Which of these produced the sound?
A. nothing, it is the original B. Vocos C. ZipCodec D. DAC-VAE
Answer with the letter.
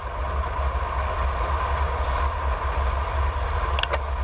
A